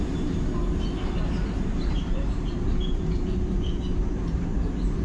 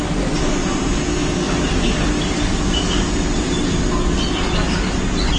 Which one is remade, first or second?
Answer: first